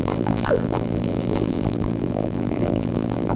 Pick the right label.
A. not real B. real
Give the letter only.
A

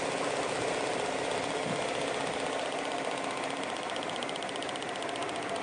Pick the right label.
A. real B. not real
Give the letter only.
A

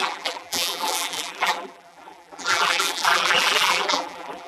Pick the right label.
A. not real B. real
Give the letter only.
A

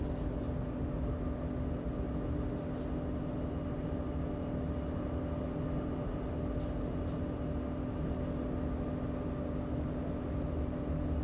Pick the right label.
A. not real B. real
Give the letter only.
B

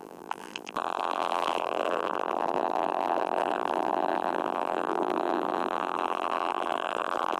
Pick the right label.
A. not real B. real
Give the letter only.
A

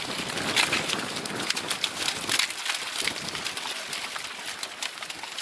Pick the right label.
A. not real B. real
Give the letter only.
B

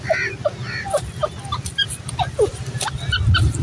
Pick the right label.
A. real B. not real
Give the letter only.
A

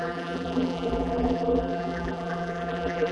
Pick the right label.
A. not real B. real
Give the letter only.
A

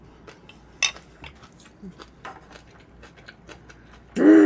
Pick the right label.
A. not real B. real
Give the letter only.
B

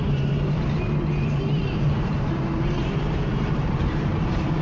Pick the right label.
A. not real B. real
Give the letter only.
A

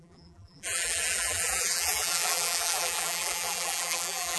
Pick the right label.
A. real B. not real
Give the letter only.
B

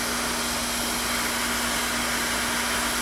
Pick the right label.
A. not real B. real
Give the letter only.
B